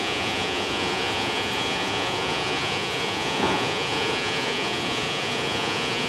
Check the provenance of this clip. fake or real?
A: fake